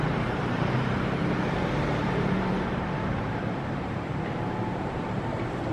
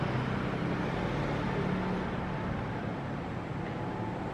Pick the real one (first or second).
second